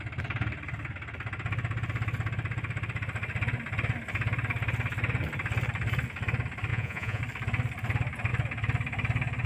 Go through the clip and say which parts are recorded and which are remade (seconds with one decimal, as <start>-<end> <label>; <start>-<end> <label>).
0.0-6.7 recorded; 6.7-7.2 remade; 7.2-9.5 recorded